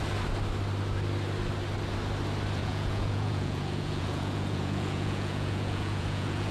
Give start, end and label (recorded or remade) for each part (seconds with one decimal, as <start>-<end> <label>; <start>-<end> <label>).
0.0-2.6 recorded; 2.6-6.5 remade

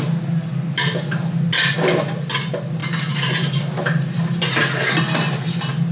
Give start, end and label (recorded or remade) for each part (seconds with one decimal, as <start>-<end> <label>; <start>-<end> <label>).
0.0-5.9 recorded

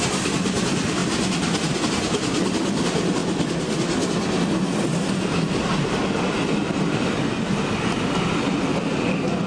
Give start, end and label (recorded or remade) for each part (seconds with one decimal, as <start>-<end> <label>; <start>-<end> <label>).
0.0-9.5 recorded

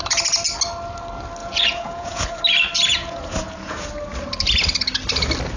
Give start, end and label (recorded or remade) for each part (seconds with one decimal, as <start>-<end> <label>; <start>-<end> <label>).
0.0-1.4 recorded; 1.4-2.4 remade; 2.4-2.9 recorded; 2.9-3.9 remade; 3.9-5.6 recorded

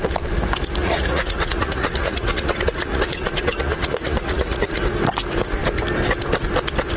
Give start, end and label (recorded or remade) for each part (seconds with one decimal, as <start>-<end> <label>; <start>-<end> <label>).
0.0-0.8 recorded; 0.8-4.8 remade; 4.8-7.0 recorded

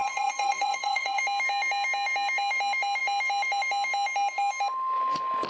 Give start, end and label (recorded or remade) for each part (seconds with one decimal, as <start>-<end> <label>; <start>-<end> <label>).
0.0-1.2 remade; 1.2-5.5 recorded